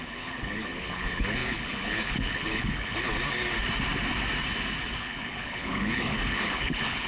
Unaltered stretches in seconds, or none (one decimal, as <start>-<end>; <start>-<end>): 3.1-5.0